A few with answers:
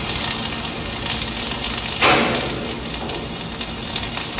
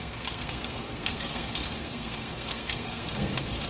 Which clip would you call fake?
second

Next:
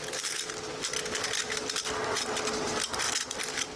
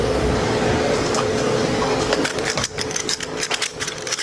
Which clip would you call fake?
second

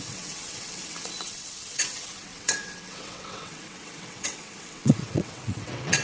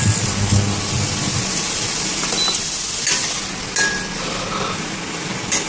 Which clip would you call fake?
first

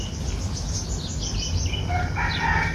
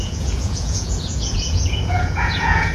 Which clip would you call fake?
second